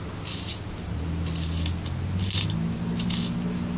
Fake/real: real